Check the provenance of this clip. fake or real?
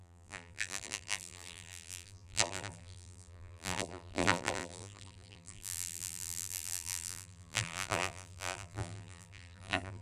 fake